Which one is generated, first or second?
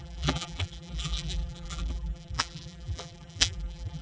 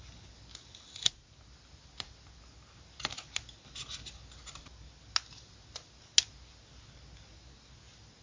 first